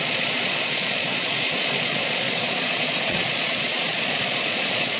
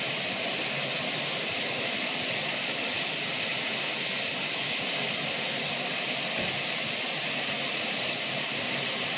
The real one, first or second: second